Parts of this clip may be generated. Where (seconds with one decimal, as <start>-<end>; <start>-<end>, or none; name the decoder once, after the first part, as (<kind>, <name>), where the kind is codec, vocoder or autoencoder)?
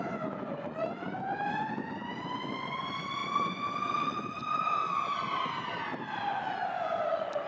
0.0-4.4 (vocoder, Vocos); 6.4-7.5